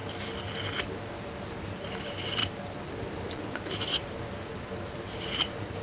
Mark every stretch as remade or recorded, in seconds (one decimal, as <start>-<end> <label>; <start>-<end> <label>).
0.0-1.4 recorded; 1.4-5.8 remade